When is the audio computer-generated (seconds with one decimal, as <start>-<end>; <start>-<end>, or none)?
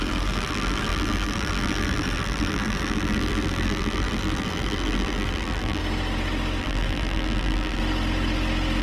0.0-5.8; 6.6-7.8